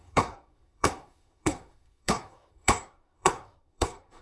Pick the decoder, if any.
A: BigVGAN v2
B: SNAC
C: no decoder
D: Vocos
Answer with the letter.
B